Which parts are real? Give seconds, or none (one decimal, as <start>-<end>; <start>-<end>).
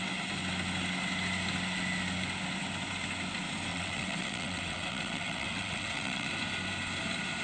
0.0-3.7; 6.3-7.4